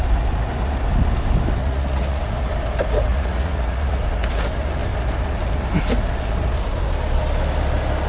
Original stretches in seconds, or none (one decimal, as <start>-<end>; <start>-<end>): 0.0-1.6; 2.2-3.1; 4.0-8.1